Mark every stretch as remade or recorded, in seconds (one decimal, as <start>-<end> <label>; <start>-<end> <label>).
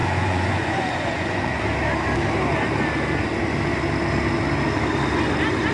0.0-1.6 remade; 1.6-5.7 recorded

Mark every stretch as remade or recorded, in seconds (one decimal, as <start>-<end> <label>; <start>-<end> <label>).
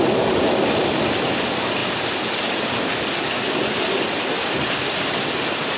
0.0-5.8 recorded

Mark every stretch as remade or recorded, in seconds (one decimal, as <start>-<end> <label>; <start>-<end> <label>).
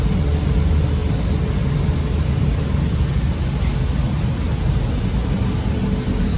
0.0-6.4 recorded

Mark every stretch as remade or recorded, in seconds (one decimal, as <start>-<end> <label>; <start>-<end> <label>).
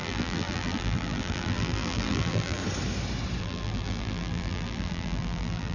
0.0-2.6 remade; 2.6-3.4 recorded; 3.4-5.7 remade